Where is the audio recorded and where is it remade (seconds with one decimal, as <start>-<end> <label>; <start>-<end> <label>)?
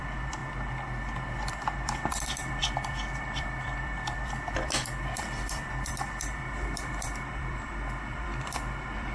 0.0-0.4 remade; 0.4-1.5 recorded; 1.5-9.1 remade